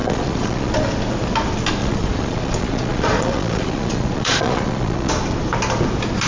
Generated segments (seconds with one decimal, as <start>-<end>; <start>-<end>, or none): 0.0-0.7; 1.8-5.1